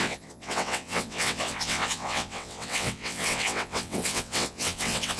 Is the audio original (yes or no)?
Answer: no